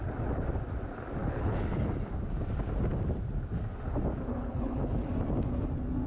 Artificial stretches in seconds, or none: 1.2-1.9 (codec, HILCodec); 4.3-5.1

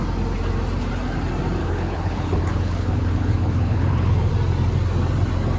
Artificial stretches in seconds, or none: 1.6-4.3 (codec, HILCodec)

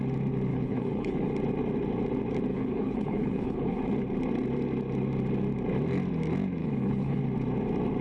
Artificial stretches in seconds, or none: 0.5-1.3 (codec, HILCodec); 2.5-3.8; 6.6-7.2

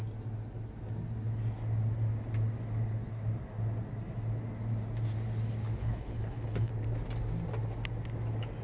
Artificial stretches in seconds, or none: 5.8-6.7 (codec, HILCodec)

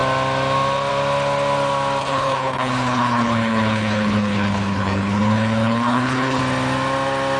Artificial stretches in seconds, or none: 2.0-6.4 (codec, HILCodec)

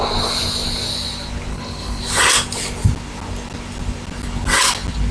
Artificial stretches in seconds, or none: 1.5-2.0 (codec, HILCodec)

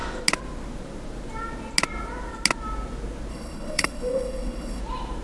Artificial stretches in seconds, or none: 3.3-4.8 (codec, HILCodec)